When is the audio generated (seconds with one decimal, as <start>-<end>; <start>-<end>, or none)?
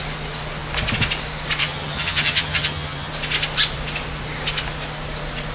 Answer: 1.6-3.1